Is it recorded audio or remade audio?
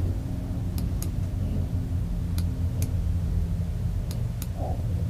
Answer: recorded